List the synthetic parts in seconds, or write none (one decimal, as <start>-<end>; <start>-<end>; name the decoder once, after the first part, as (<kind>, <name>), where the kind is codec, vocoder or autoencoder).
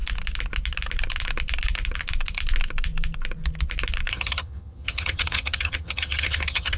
4.1-6.8 (vocoder, HiFi-GAN)